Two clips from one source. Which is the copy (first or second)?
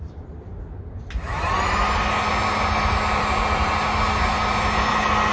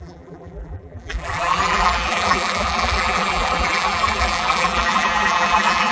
second